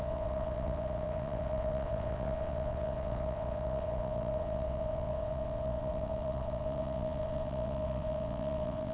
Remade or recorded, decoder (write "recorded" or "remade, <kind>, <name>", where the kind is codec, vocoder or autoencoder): remade, vocoder, WaveNeXt